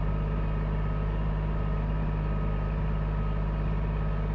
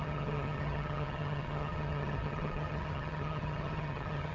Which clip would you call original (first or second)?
first